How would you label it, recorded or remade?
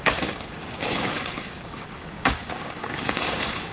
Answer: remade